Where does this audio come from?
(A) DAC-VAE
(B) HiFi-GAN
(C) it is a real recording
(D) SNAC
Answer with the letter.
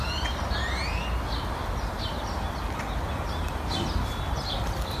C